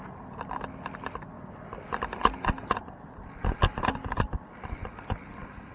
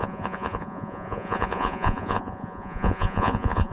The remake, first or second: second